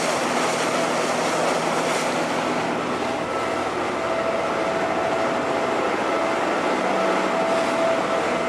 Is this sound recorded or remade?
recorded